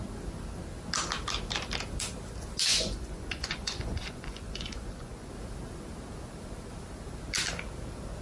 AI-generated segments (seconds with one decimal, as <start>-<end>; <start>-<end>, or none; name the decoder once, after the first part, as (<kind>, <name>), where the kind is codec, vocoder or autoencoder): 2.7-5.3 (vocoder, Vocos)